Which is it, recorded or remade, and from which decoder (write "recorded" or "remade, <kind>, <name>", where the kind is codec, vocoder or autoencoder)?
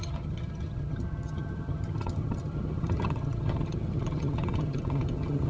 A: remade, vocoder, HiFi-GAN